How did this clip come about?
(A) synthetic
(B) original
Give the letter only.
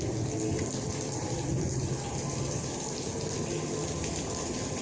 B